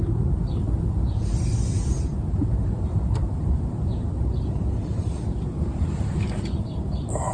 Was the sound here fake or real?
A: fake